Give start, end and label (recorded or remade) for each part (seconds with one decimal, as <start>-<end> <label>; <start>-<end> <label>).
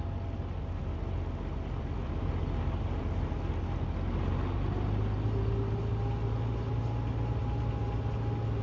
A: 0.0-8.6 recorded